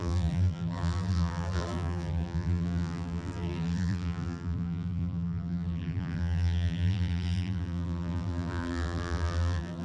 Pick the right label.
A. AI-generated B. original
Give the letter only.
A